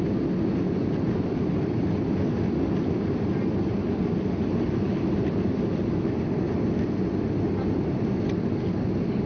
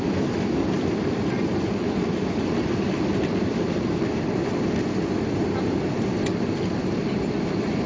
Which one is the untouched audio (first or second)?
first